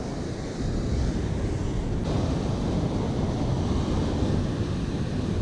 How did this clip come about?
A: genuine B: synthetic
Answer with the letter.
A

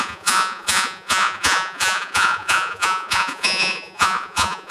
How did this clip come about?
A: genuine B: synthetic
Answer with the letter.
B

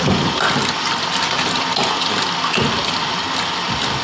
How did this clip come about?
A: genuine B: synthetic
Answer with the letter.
A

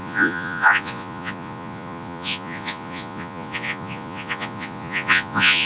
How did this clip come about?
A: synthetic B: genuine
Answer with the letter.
A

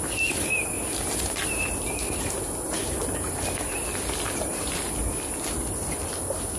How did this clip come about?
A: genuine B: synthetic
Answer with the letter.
A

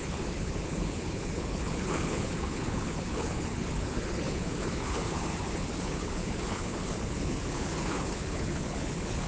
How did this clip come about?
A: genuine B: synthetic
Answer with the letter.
B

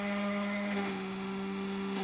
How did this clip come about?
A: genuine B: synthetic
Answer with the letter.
B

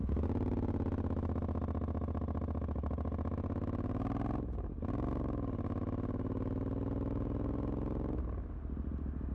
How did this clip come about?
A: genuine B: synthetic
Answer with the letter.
A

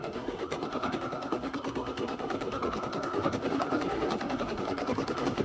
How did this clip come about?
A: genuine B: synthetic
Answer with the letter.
B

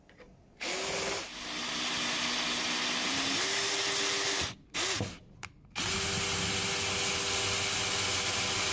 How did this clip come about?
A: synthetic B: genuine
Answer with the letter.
B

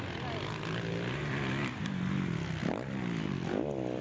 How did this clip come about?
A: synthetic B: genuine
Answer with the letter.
B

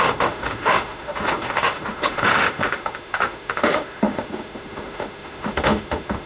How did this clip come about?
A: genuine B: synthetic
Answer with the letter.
B